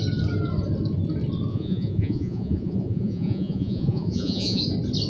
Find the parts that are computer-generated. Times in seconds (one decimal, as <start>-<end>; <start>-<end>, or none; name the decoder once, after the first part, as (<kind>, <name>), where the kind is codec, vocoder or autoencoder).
1.5-4.6 (vocoder, Vocos)